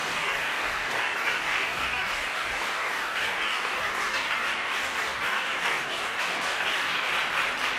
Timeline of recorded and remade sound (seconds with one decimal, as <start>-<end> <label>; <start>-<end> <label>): 0.0-7.1 remade; 7.1-7.8 recorded